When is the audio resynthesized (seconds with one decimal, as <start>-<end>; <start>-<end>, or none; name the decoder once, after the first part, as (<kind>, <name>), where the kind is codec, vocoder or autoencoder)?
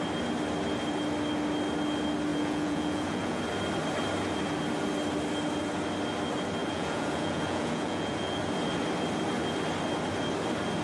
2.3-3.4 (vocoder, Vocos); 6.6-8.4